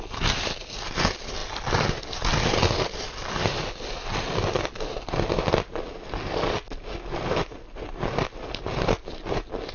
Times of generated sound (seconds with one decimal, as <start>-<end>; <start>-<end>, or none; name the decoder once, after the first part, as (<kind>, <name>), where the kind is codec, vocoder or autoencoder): none